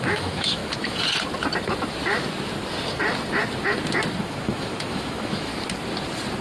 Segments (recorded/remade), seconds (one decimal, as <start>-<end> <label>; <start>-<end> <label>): 0.0-0.6 remade; 0.6-4.2 recorded; 4.2-5.5 remade; 5.5-6.4 recorded